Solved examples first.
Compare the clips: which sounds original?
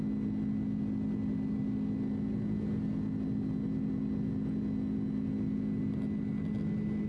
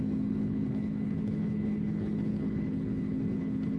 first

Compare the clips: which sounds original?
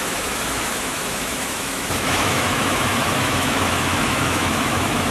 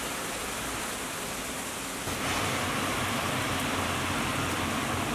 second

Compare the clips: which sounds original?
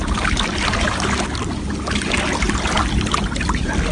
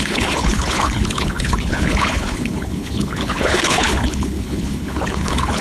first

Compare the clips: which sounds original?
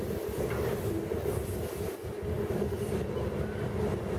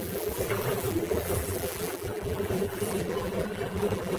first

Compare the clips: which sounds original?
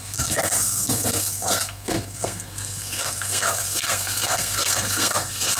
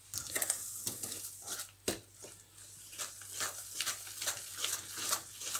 second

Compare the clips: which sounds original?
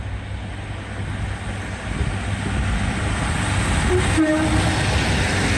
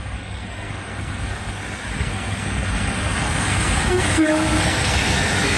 first